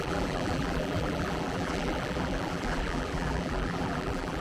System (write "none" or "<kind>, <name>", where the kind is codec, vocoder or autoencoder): vocoder, BigVGAN v2